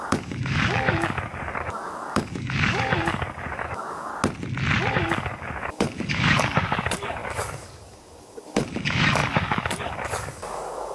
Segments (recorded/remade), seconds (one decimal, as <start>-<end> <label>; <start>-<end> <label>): 0.0-4.1 remade; 4.1-4.9 recorded; 4.9-10.9 remade